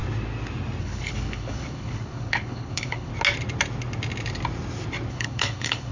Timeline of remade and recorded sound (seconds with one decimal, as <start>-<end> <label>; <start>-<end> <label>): 0.0-0.8 recorded; 0.8-3.1 remade; 3.1-5.1 recorded; 5.1-5.9 remade